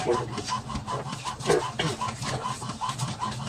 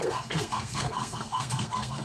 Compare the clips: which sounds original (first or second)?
first